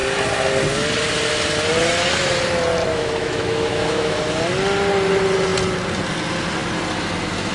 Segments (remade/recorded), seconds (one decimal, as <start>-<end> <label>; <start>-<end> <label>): 0.0-2.9 recorded; 2.9-4.2 remade; 4.2-7.5 recorded